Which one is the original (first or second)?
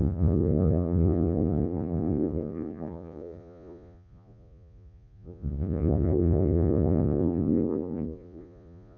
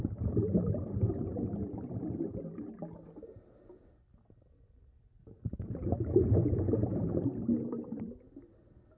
second